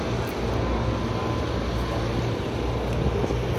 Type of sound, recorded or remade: recorded